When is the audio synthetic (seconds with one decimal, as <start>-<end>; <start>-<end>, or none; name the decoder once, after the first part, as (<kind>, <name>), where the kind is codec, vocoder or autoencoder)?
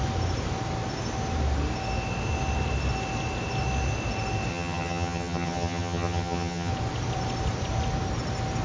4.5-6.7 (vocoder, HiFi-GAN)